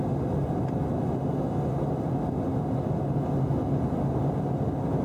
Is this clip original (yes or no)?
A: yes